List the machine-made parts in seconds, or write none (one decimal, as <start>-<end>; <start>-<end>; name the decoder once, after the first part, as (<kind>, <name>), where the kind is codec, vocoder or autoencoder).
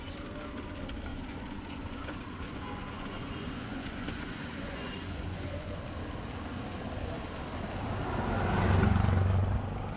1.1-5.7 (vocoder, Vocos)